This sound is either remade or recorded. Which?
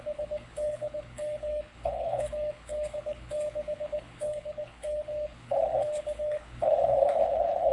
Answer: remade